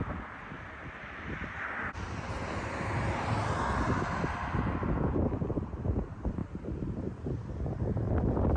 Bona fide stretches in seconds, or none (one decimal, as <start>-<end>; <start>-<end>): 0.0-8.6